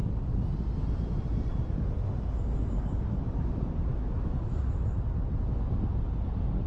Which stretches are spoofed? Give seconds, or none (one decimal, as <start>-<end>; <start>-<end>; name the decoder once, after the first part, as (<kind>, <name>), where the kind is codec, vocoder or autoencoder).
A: 3.9-4.7 (autoencoder, DAC-VAE)